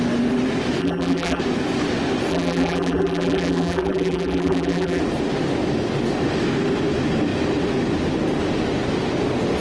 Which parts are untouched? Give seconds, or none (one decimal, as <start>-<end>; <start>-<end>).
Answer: 0.0-0.8; 1.4-2.3; 5.0-9.6